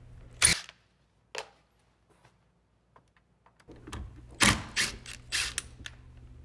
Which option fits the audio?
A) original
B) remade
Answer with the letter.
A